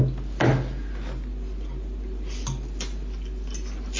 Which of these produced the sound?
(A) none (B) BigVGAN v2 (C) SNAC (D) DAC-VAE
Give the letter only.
A